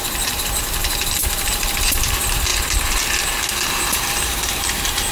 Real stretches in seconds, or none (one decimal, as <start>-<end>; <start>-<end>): 2.5-3.5